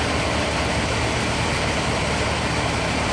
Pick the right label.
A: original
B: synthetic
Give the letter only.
A